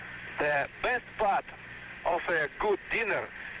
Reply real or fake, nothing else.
fake